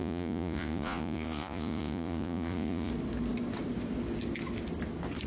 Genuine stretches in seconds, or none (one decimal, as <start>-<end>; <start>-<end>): 2.9-5.3

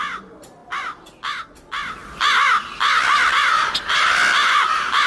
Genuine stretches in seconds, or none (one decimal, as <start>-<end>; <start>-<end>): 0.0-5.1

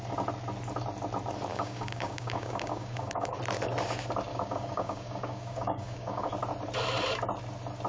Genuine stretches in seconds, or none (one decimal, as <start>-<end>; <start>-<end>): 0.0-1.5; 3.4-4.3; 6.3-7.9